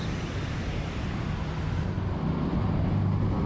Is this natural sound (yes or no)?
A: yes